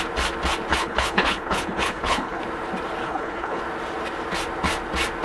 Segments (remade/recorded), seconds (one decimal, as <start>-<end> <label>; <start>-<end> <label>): 0.0-0.7 recorded; 0.7-2.4 remade; 2.4-3.0 recorded; 3.0-3.6 remade; 3.6-5.2 recorded